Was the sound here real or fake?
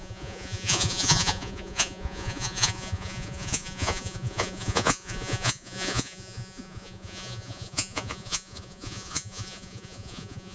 fake